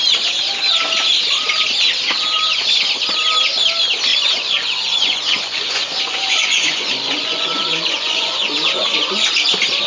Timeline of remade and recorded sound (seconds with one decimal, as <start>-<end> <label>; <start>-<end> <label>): 0.0-4.1 recorded; 4.1-9.1 remade; 9.1-9.9 recorded